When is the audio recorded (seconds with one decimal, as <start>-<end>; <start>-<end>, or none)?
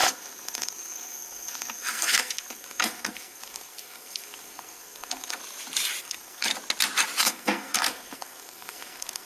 5.4-6.0; 6.5-7.2